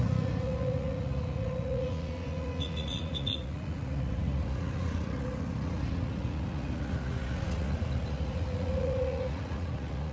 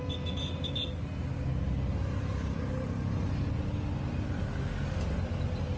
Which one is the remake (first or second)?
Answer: first